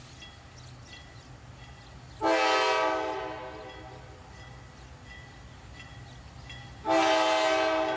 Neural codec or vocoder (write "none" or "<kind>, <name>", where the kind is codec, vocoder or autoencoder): none